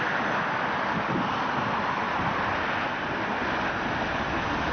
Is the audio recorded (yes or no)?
yes